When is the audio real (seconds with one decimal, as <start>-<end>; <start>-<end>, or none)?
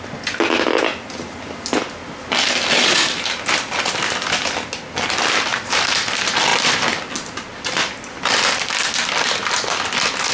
0.0-5.5; 6.1-6.5